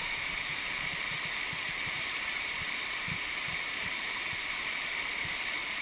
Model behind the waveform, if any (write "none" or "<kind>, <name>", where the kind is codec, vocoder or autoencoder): vocoder, BigVGAN v2